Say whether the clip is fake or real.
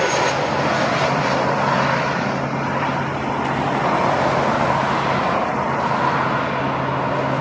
real